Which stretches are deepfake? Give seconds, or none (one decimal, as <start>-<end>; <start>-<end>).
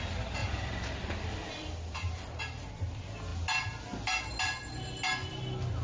0.4-2.4